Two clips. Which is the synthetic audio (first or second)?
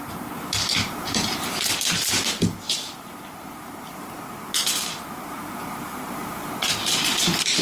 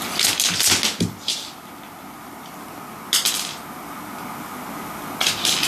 first